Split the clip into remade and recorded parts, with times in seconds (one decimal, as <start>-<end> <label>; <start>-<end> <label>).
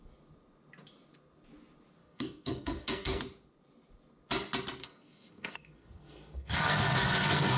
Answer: 0.0-2.0 recorded; 2.0-3.2 remade; 3.2-4.8 recorded; 4.8-7.6 remade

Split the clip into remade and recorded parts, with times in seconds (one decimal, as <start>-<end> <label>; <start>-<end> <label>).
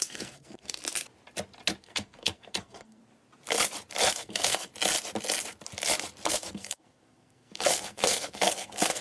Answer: 0.0-0.8 remade; 0.8-1.8 recorded; 1.8-3.0 remade; 3.0-4.1 recorded; 4.1-4.7 remade; 4.7-6.3 recorded; 6.3-9.0 remade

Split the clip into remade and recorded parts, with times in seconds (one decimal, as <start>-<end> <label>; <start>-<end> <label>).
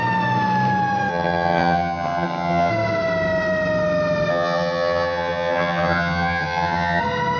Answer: 0.0-1.1 recorded; 1.1-2.7 remade; 2.7-4.3 recorded; 4.3-7.0 remade; 7.0-7.4 recorded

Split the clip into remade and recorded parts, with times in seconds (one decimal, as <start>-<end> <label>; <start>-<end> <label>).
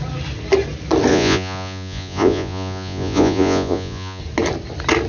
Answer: 0.0-1.1 recorded; 1.1-4.2 remade; 4.2-5.1 recorded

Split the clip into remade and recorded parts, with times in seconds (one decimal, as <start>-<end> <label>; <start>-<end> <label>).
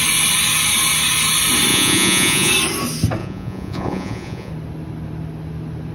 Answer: 0.0-1.7 recorded; 1.7-2.5 remade; 2.5-3.2 recorded; 3.2-4.5 remade; 4.5-5.9 recorded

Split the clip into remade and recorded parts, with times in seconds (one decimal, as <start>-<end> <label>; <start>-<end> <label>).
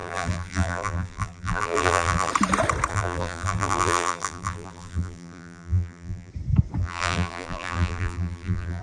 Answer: 0.0-2.3 remade; 2.3-2.9 recorded; 2.9-6.3 remade; 6.3-6.8 recorded; 6.8-8.8 remade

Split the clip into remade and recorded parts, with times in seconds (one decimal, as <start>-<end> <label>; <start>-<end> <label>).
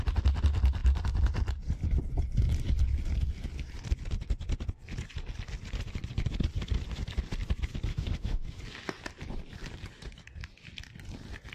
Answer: 0.0-7.9 recorded; 7.9-8.6 remade; 8.6-11.5 recorded